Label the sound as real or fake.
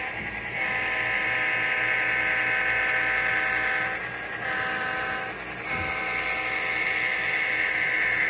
real